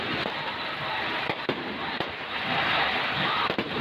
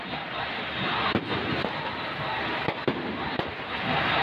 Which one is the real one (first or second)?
second